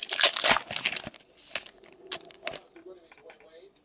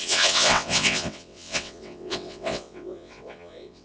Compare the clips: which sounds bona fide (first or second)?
first